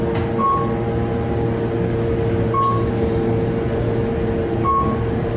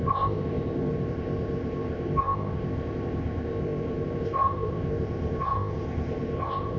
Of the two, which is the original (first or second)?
first